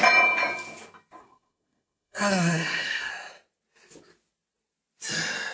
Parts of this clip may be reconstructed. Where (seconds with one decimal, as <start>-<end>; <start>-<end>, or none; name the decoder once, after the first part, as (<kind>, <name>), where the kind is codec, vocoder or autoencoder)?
1.2-3.1 (codec, SNAC)